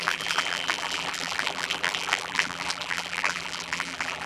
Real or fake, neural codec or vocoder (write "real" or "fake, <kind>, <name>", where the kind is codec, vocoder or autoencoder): fake, vocoder, BigVGAN v2